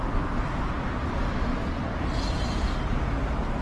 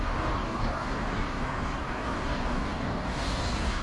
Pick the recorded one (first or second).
first